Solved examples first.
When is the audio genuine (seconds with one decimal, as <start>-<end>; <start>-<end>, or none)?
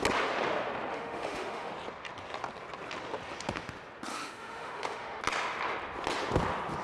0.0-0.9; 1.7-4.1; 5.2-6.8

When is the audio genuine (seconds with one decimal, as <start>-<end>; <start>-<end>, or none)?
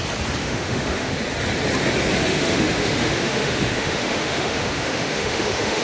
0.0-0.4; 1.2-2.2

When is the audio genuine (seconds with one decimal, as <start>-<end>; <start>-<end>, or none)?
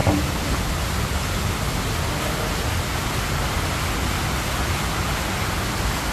0.0-6.1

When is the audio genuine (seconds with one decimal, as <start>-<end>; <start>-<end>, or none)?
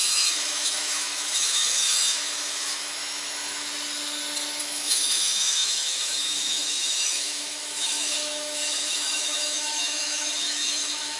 3.7-4.6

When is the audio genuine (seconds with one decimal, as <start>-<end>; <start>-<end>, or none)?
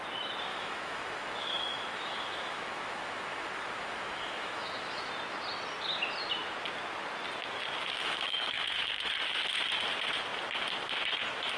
0.0-0.5; 5.1-8.0; 9.1-11.6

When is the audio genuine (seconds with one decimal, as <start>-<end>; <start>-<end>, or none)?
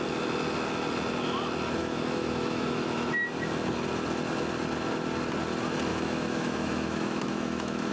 0.0-1.8; 3.1-5.9